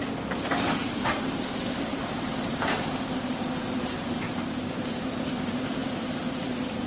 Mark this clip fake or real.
fake